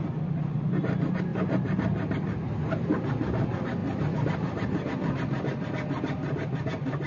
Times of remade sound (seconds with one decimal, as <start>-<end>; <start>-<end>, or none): none